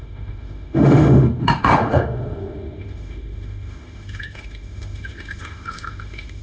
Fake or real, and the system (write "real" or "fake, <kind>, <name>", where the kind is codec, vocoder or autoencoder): fake, autoencoder, DAC-VAE